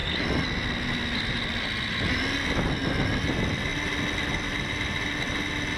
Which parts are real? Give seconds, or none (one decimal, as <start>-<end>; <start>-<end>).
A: 0.0-5.8